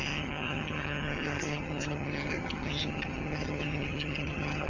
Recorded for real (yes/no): no